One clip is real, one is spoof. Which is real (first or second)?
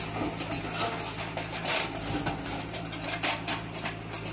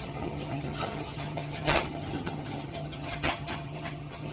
first